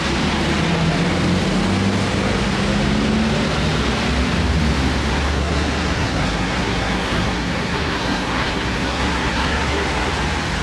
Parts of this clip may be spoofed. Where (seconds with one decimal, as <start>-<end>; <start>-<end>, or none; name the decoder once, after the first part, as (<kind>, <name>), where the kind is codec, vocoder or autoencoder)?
5.1-10.1 (codec, SNAC)